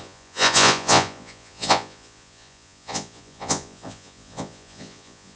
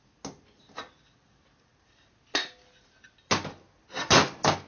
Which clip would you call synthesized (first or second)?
first